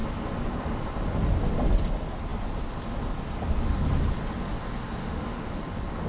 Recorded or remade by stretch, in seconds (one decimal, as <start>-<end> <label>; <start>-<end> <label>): 0.0-5.0 recorded; 5.0-5.6 remade; 5.6-6.1 recorded